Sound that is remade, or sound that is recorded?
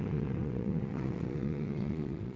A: remade